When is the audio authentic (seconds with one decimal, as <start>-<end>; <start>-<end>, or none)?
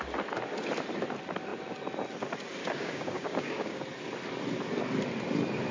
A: 0.0-2.6; 3.8-5.7